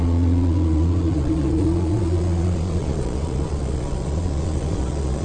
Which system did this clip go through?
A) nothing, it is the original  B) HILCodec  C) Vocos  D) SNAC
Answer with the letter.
C